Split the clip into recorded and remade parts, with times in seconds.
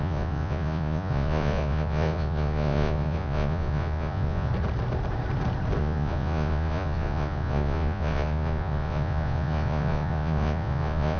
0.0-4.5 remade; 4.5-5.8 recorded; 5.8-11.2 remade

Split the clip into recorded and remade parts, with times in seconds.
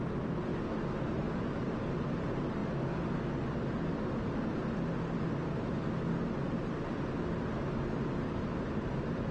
0.0-0.5 remade; 0.5-1.3 recorded; 1.3-2.6 remade; 2.6-7.8 recorded; 7.8-9.3 remade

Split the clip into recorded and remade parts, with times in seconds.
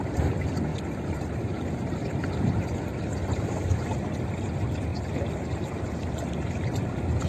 0.0-7.3 recorded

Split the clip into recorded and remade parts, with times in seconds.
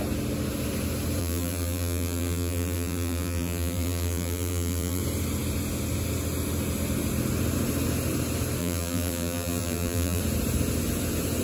0.0-1.2 recorded; 1.2-5.0 remade; 5.0-8.6 recorded; 8.6-10.2 remade; 10.2-11.4 recorded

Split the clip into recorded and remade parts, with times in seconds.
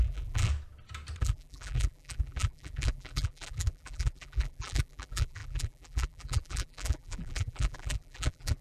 0.0-0.5 remade; 0.5-1.2 recorded; 1.2-8.6 remade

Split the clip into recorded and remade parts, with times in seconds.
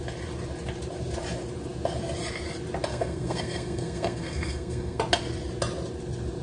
0.0-2.9 recorded; 2.9-5.0 remade; 5.0-6.4 recorded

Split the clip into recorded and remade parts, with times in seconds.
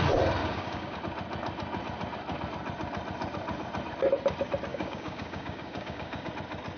0.0-0.4 recorded; 0.4-1.0 remade; 1.0-4.7 recorded; 4.7-6.3 remade; 6.3-6.8 recorded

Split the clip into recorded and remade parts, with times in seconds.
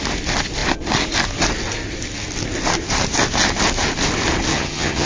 0.0-4.5 recorded; 4.5-5.1 remade